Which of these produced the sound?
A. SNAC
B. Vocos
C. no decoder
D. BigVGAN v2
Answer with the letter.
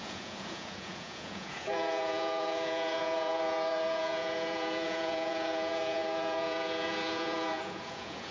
B